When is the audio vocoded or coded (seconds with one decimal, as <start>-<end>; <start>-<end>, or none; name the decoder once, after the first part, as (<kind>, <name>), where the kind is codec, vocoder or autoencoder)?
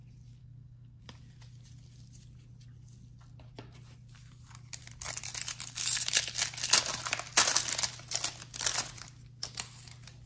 0.4-1.0 (codec, SNAC)